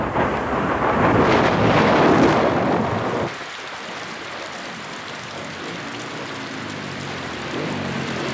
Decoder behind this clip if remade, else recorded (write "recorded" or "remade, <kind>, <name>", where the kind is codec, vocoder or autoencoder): remade, vocoder, BigVGAN v2